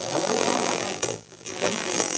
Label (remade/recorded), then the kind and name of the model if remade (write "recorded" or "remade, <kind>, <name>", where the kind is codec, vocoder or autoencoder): remade, vocoder, BigVGAN v2